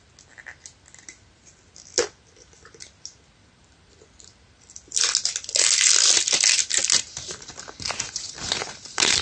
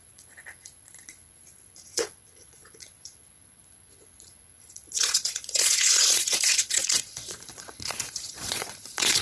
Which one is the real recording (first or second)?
first